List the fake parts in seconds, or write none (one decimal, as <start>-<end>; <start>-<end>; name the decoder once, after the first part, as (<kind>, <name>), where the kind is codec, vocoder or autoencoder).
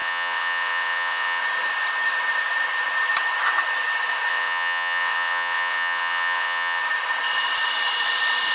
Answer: 0.0-1.4 (vocoder, WaveNeXt); 4.3-6.8